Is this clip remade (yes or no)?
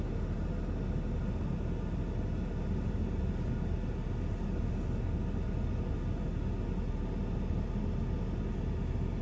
no